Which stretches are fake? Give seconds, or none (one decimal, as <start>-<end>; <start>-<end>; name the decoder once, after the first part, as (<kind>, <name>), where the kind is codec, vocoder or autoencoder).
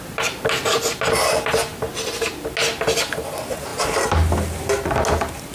none